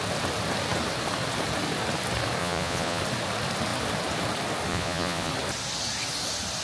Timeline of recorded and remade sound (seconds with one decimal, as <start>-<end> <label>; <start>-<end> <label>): 0.0-2.4 recorded; 2.4-3.0 remade; 3.0-4.7 recorded; 4.7-5.3 remade; 5.3-6.6 recorded